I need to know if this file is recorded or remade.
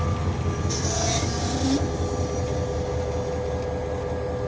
recorded